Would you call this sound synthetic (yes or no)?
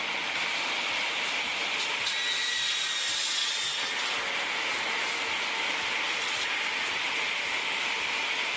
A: no